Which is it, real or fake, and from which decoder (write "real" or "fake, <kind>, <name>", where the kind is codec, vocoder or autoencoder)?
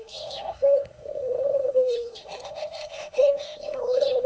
fake, codec, SNAC